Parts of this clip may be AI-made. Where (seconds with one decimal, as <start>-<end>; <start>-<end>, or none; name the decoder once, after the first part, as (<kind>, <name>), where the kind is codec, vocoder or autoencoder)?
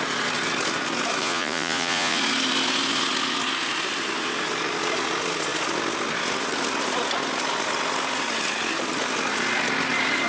1.2-2.2 (vocoder, Vocos)